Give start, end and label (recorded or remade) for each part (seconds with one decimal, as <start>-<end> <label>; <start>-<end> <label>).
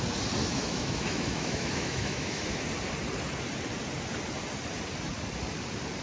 0.0-0.4 recorded; 0.4-2.6 remade; 2.6-6.0 recorded